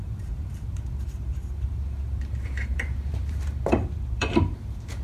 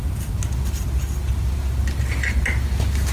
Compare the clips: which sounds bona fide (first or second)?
second